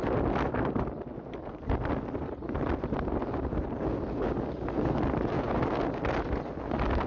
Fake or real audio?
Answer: real